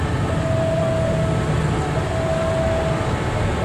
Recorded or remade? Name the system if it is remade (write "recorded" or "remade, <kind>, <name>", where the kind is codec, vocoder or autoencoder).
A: recorded